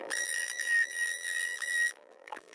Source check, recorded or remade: remade